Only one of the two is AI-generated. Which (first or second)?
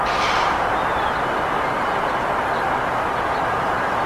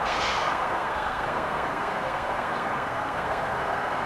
second